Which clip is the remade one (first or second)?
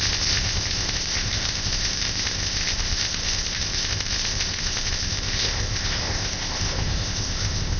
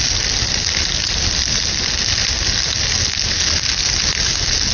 first